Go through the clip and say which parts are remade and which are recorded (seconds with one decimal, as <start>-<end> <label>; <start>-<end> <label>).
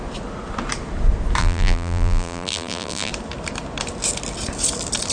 0.0-1.4 recorded; 1.4-3.1 remade; 3.1-5.1 recorded